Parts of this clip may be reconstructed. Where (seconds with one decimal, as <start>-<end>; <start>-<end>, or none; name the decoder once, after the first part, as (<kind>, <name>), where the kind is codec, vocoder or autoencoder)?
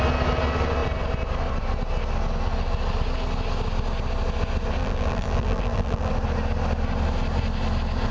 4.8-6.1 (vocoder, BigVGAN v2)